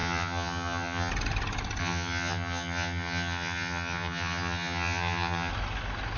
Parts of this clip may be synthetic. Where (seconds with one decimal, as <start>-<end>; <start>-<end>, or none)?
0.0-1.1; 1.8-5.5